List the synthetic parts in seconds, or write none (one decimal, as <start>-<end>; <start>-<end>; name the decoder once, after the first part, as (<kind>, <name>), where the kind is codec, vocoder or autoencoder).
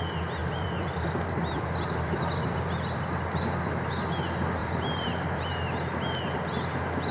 0.4-3.0 (vocoder, BigVGAN v2); 4.6-5.5